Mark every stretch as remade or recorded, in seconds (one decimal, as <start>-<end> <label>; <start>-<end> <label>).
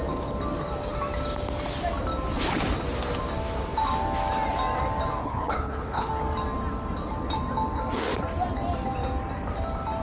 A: 0.0-5.2 recorded; 5.2-6.1 remade; 6.1-10.0 recorded